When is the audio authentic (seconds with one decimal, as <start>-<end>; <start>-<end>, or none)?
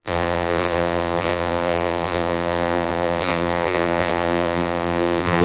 none